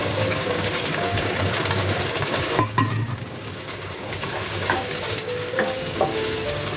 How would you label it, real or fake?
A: fake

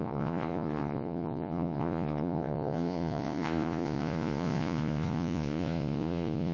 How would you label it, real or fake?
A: fake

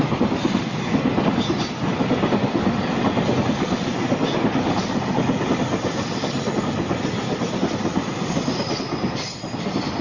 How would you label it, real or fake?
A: real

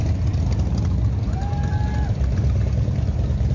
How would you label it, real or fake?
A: real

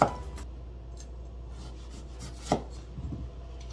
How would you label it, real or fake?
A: real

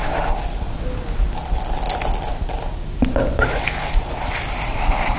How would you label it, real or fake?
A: real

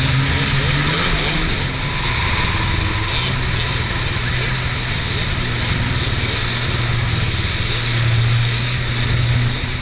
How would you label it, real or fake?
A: real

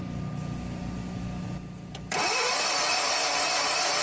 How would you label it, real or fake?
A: real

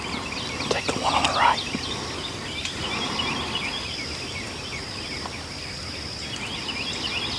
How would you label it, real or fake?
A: real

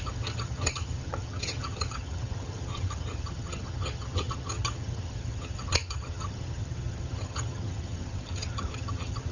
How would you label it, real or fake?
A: fake